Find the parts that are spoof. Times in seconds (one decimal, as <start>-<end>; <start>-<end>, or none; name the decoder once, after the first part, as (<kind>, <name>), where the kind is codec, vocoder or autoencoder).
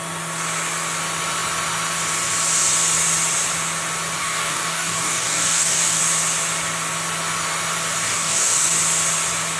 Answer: 4.2-6.0 (codec, DAC); 8.1-8.7